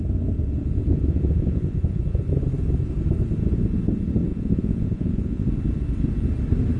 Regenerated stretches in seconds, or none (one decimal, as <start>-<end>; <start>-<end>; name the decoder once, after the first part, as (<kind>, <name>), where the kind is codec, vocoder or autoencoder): 0.6-2.0 (vocoder, Vocos); 4.3-5.5